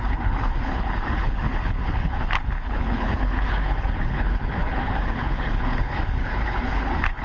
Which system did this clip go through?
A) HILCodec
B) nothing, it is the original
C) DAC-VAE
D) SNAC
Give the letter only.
A